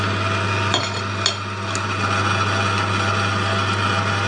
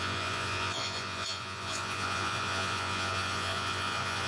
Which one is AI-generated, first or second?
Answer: second